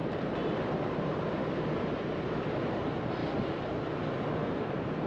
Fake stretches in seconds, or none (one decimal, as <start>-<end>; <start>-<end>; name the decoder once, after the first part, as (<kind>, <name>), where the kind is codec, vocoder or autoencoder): 0.8-1.4 (vocoder, BigVGAN v2); 2.7-5.1